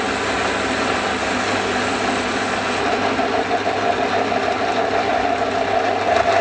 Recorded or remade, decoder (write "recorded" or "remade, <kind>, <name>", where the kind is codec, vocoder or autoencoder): recorded